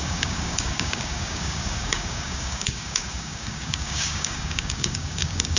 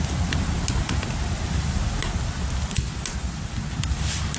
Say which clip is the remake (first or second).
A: first